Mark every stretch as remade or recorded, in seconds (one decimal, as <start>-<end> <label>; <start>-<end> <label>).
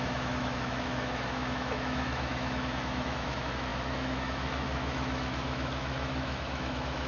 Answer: 0.0-7.1 remade